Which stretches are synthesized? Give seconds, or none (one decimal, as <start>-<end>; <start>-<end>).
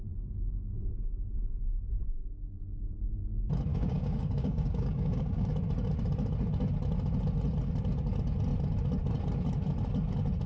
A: 3.7-5.5